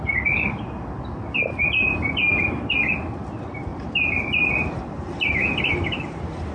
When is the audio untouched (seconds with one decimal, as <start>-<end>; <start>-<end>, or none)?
0.0-6.5